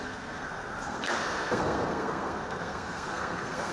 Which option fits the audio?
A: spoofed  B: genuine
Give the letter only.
A